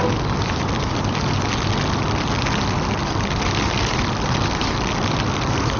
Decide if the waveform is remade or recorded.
recorded